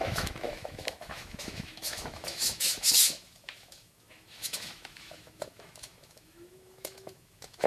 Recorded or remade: remade